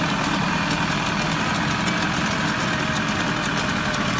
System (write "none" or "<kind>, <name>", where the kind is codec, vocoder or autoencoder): none